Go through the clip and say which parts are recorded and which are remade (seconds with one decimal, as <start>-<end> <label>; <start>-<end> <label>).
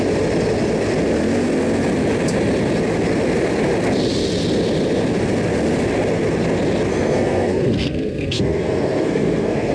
0.0-6.9 recorded; 6.9-9.7 remade